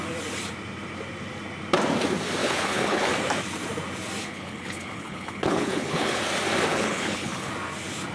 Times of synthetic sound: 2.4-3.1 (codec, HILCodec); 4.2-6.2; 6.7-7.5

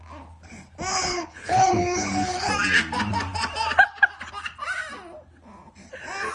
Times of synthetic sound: 0.9-2.5 (codec, HILCodec)